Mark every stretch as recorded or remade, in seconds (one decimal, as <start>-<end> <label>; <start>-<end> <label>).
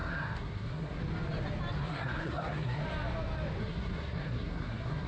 0.0-1.0 remade; 1.0-1.8 recorded; 1.8-2.8 remade; 2.8-3.6 recorded; 3.6-5.1 remade